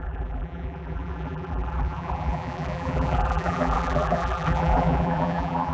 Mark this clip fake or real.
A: fake